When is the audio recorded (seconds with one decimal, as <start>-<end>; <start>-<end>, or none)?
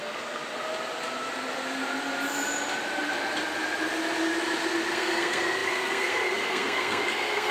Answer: 0.4-4.9